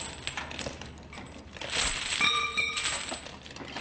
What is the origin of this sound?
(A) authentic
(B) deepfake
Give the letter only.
A